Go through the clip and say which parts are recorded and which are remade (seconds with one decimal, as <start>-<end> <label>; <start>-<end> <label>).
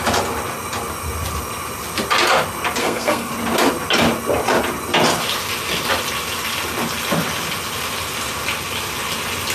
0.0-2.8 recorded; 2.8-3.3 remade; 3.3-9.5 recorded